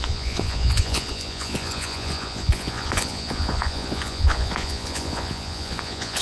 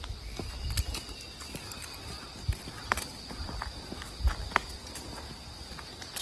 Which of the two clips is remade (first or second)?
first